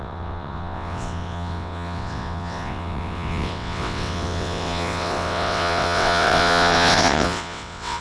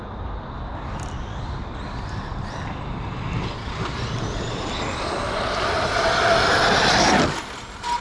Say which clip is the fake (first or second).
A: first